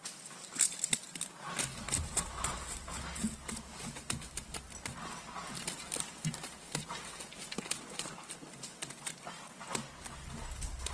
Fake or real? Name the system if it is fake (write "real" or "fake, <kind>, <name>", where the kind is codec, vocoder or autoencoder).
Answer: real